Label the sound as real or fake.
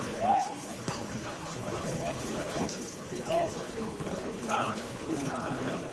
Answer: fake